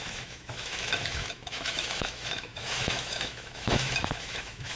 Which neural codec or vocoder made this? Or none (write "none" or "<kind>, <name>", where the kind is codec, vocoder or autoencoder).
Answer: autoencoder, DAC-VAE